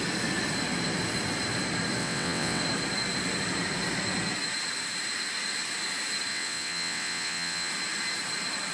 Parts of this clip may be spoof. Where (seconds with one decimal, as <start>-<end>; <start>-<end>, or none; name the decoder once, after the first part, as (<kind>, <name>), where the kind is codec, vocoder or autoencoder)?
2.0-2.6 (vocoder, WaveNeXt); 6.3-7.7